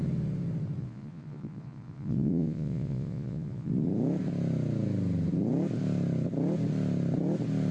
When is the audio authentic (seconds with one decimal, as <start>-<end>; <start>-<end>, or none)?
0.0-0.8; 3.7-7.7